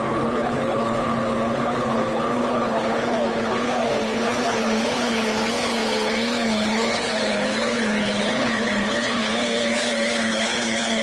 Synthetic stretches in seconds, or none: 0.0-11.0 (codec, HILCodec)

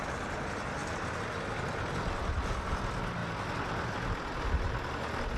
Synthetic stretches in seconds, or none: none

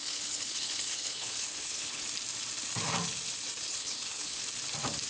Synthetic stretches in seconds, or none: 0.0-2.0 (codec, HILCodec); 3.7-4.4

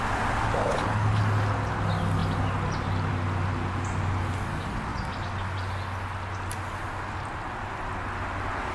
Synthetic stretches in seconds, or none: 0.6-1.2 (codec, HILCodec)

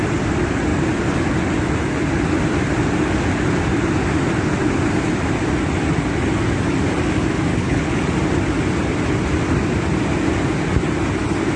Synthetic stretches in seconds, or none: 7.5-8.0 (codec, HILCodec)

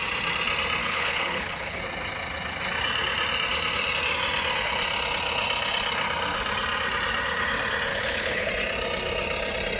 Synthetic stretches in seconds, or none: 0.8-1.8 (codec, HILCodec); 7.9-8.5

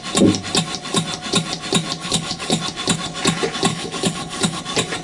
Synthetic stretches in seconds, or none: 2.0-2.6 (codec, HILCodec); 3.7-4.6